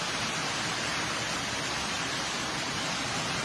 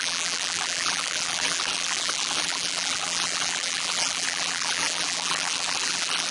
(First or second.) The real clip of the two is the first